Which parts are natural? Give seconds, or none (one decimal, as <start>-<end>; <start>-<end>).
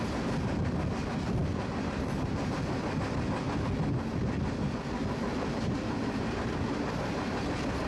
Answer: 0.0-5.3; 6.8-7.9